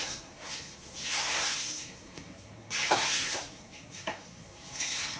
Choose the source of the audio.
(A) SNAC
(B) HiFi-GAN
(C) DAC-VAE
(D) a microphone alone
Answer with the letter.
A